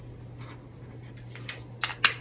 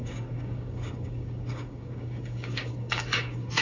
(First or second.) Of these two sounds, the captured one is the first